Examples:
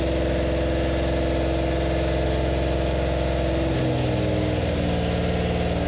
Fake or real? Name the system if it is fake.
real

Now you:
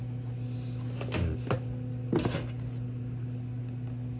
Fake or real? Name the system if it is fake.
real